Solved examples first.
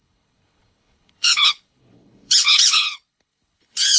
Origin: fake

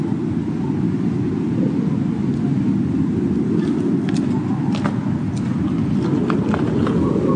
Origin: real